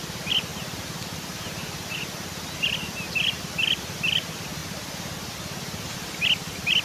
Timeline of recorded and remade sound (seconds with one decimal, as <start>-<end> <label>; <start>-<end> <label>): 0.0-6.8 recorded